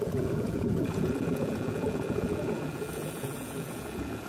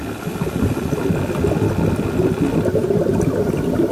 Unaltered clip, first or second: second